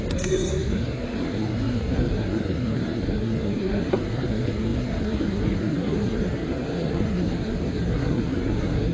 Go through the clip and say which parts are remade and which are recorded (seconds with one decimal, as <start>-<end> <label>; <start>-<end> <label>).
0.0-8.9 remade